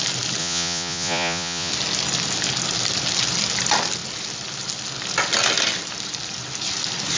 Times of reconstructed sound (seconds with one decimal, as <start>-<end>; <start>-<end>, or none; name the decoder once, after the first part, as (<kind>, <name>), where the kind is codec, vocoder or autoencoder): 0.4-1.7 (vocoder, Vocos)